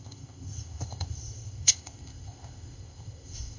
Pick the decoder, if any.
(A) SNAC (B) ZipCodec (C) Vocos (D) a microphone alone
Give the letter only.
B